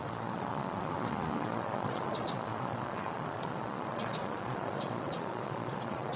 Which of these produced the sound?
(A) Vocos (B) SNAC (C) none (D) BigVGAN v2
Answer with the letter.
A